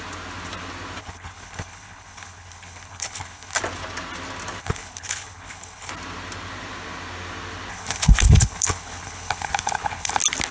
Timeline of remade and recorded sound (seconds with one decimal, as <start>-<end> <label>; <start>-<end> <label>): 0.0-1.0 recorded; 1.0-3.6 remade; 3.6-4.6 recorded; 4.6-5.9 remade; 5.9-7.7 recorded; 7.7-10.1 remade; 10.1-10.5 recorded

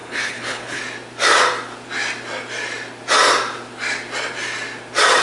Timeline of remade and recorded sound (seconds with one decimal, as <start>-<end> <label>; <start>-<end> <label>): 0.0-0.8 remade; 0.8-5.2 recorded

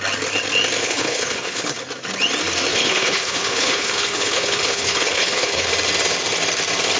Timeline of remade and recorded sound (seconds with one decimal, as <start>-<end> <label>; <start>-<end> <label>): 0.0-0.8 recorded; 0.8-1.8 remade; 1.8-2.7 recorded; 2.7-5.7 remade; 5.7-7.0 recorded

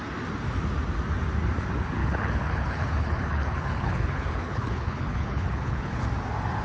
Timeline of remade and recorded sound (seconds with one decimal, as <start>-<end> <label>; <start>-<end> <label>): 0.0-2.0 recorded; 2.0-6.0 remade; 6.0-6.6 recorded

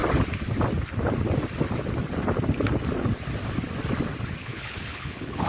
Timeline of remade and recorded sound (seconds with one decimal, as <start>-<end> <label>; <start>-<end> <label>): 0.0-4.4 recorded; 4.4-5.5 remade

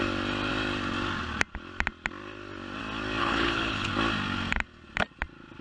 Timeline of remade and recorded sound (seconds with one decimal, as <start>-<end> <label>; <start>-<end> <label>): 0.0-3.2 recorded; 3.2-3.9 remade; 3.9-5.6 recorded